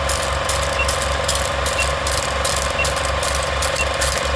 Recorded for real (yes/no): yes